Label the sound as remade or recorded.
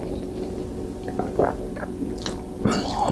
recorded